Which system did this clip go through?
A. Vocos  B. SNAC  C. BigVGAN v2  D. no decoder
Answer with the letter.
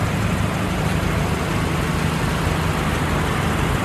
D